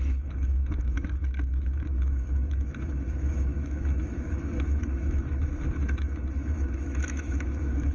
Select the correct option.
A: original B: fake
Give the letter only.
B